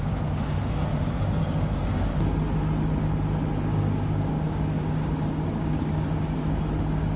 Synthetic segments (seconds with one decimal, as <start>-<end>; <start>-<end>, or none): 0.9-2.2; 3.7-6.6